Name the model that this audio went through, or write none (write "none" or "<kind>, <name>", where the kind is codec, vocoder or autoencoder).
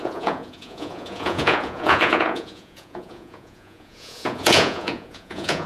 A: vocoder, Vocos